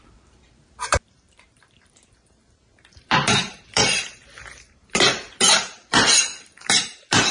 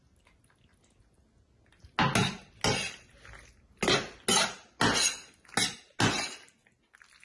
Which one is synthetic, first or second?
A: first